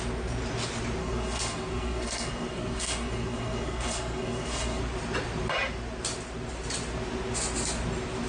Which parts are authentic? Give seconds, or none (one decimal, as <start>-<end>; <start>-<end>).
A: 0.0-1.0; 4.8-8.3